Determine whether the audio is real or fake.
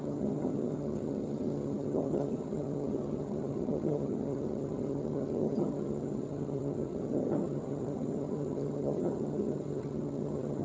fake